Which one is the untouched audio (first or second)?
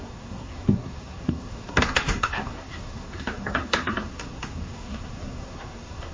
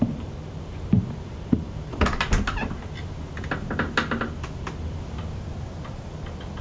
second